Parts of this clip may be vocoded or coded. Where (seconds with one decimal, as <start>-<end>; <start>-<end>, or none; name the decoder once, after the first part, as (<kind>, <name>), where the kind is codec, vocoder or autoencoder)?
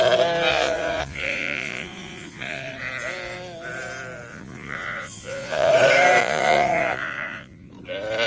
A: 0.5-2.6 (vocoder, Vocos); 4.3-5.7; 6.2-7.7